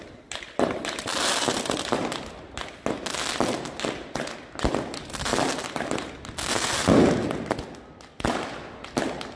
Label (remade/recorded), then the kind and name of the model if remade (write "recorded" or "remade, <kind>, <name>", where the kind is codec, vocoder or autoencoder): recorded